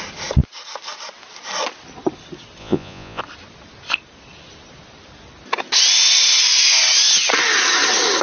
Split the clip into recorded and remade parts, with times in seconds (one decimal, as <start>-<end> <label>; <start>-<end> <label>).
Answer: 0.0-2.6 recorded; 2.6-3.2 remade; 3.2-8.2 recorded

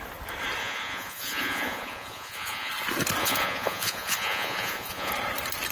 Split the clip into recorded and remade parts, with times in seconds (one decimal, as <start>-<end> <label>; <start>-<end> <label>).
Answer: 0.0-0.6 recorded; 0.6-2.7 remade; 2.7-3.2 recorded; 3.2-5.1 remade; 5.1-5.7 recorded